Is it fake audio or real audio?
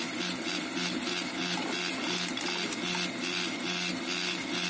real